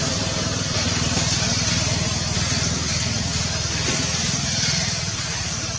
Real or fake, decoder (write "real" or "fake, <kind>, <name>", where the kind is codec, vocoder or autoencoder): fake, vocoder, BigVGAN v2